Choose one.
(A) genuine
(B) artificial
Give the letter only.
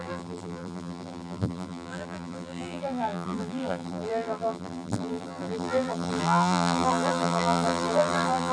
B